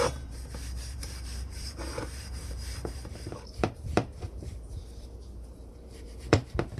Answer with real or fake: fake